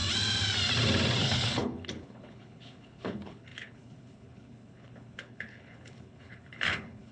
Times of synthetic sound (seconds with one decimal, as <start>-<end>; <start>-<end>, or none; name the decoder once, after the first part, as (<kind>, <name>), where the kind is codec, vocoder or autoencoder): 1.2-7.1 (codec, HILCodec)